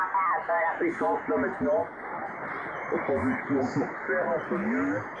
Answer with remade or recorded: recorded